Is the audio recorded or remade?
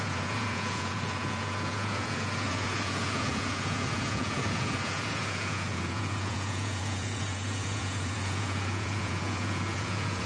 remade